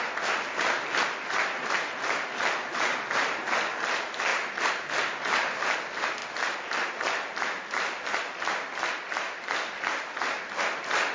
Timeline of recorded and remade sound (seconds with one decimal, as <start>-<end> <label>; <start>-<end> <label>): 0.0-6.2 remade; 6.2-6.9 recorded; 6.9-11.1 remade